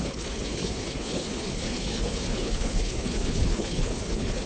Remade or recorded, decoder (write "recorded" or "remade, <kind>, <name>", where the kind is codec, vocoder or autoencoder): remade, codec, HILCodec